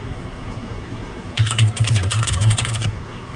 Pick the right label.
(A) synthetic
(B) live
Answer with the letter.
A